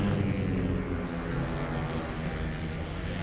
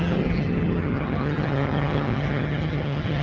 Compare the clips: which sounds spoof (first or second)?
second